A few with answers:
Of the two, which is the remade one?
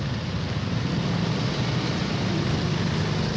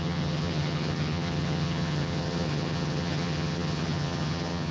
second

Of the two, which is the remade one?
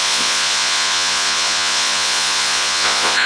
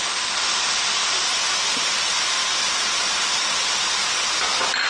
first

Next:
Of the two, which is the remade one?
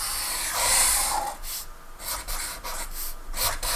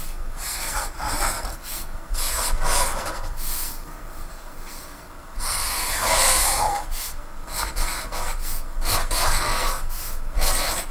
second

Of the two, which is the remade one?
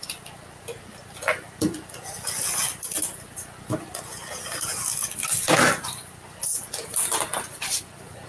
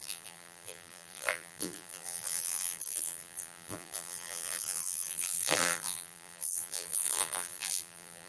second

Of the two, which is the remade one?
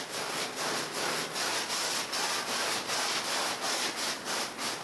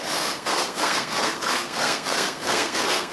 second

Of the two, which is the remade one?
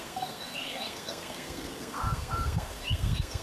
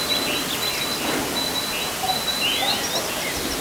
first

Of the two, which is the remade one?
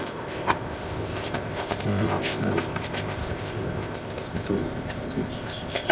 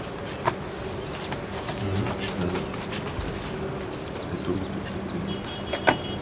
first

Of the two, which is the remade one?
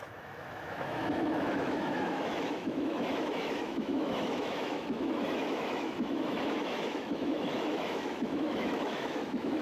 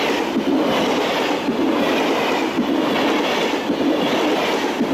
first